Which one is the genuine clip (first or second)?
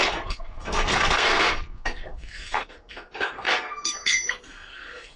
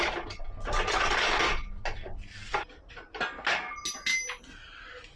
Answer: second